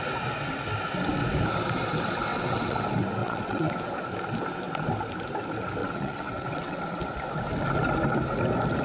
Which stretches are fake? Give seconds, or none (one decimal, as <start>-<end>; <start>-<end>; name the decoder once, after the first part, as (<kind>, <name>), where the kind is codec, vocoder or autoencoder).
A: 2.3-2.8 (vocoder, WaveNeXt); 3.2-3.7; 5.8-6.8